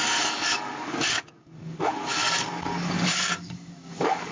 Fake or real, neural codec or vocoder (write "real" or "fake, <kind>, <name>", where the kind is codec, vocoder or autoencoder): fake, codec, DAC